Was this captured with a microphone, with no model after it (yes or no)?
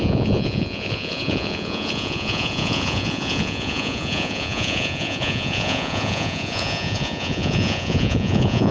no